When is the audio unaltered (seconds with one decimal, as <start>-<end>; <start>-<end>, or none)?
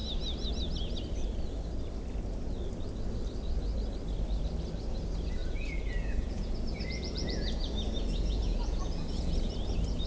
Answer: 0.0-5.4; 9.5-10.1